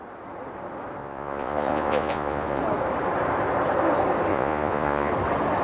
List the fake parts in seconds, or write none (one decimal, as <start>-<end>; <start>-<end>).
1.0-2.6; 4.3-5.1